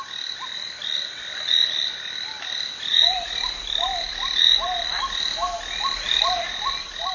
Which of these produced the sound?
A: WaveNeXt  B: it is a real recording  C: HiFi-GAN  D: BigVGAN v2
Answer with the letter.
B